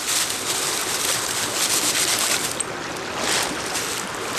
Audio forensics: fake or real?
real